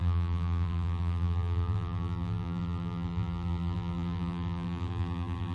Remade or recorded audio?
remade